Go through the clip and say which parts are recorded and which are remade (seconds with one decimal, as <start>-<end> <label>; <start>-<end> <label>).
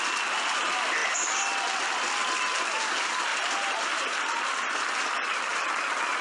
0.0-6.2 recorded